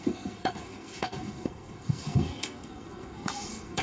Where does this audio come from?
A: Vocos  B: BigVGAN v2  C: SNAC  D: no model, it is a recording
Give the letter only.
C